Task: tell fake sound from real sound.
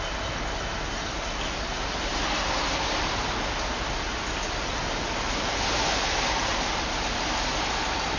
real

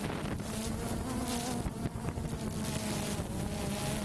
real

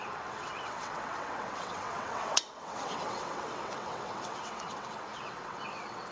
fake